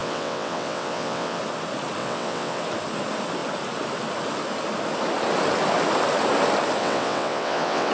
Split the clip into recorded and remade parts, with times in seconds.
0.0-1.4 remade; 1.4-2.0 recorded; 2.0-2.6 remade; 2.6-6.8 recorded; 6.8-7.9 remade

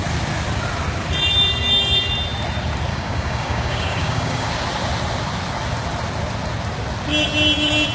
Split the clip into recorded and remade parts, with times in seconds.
0.0-2.9 recorded; 2.9-4.5 remade; 4.5-7.9 recorded

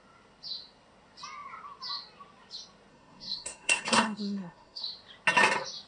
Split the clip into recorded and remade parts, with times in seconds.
0.0-2.9 recorded; 2.9-4.8 remade; 4.8-5.9 recorded